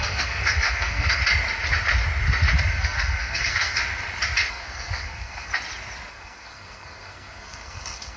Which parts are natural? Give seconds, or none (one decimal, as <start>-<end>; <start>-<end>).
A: 1.2-2.8; 3.8-4.5; 5.5-6.1